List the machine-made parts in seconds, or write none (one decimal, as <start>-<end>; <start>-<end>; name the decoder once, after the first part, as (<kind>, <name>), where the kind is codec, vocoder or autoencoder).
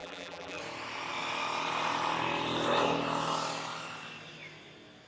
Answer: 0.0-0.6 (vocoder, BigVGAN v2)